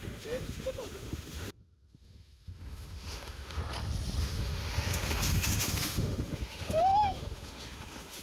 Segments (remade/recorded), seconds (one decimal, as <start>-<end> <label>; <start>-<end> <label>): 0.0-3.6 remade; 3.6-4.2 recorded; 4.2-8.2 remade